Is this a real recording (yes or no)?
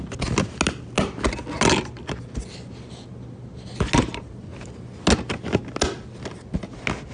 yes